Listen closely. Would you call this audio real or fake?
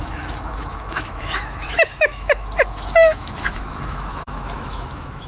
fake